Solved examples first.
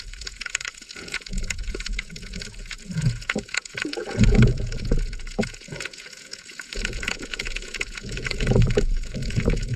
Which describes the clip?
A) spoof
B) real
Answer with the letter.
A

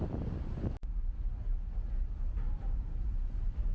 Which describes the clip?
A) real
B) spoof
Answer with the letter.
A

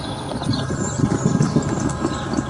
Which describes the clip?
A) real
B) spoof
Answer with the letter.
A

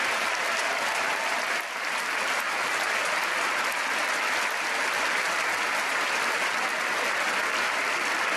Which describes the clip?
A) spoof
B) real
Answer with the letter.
B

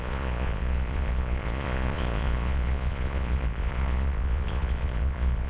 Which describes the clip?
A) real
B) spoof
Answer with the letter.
B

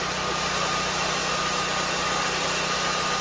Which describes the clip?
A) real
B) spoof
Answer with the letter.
A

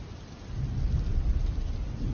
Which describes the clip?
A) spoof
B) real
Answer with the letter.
B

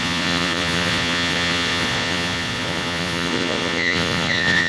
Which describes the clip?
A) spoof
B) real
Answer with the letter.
A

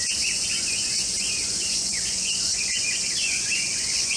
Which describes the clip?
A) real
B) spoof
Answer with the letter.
B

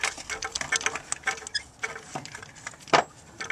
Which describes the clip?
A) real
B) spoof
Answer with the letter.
A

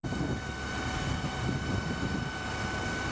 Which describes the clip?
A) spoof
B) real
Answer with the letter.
B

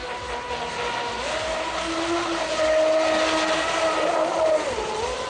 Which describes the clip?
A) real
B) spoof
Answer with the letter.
A